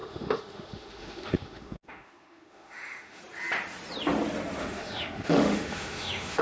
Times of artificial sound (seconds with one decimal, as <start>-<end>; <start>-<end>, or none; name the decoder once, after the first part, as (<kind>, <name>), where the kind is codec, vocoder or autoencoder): 0.0-3.2 (autoencoder, DAC-VAE); 4.6-6.4